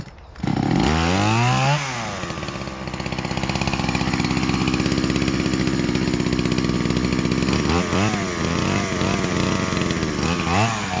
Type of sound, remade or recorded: recorded